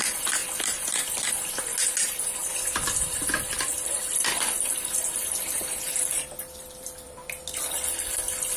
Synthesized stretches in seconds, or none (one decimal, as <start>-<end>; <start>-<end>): 0.4-1.3; 2.4-7.4